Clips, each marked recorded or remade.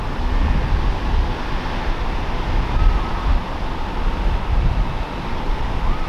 recorded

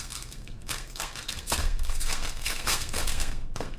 remade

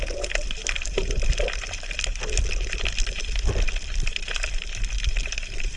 recorded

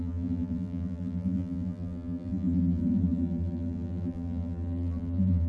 remade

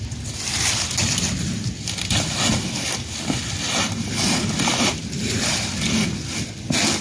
recorded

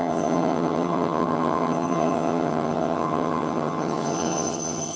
remade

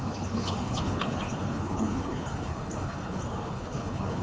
remade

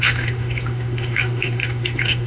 remade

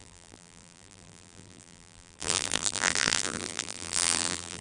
remade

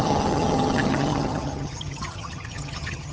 remade